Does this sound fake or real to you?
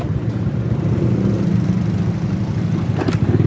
real